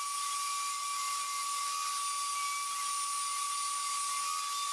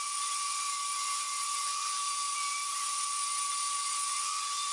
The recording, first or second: first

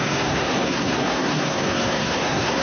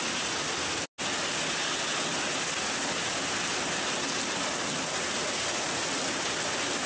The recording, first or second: second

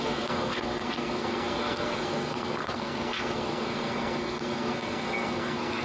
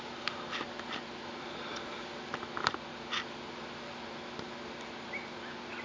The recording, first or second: second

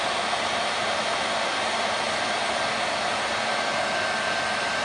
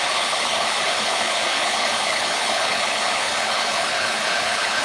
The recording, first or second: first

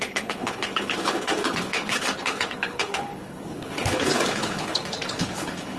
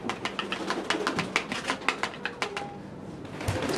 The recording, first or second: second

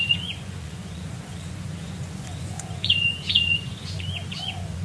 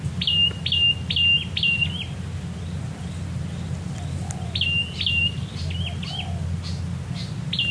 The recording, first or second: second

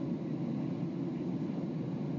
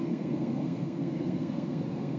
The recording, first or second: first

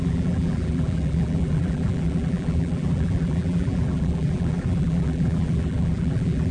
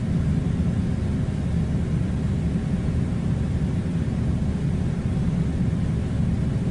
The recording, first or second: second